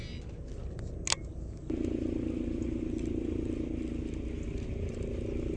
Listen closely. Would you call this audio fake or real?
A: real